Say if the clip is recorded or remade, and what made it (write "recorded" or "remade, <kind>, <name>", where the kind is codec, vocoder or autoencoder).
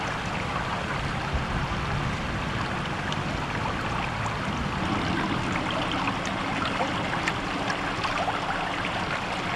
recorded